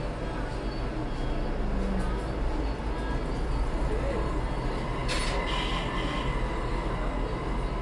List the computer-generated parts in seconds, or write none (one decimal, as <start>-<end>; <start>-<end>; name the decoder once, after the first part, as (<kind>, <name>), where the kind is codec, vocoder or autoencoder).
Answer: none